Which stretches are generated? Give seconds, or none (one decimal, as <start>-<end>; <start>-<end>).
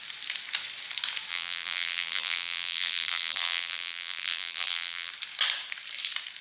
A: 1.3-5.1